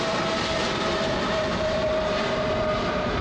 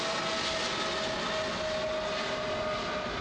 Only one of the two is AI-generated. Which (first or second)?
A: first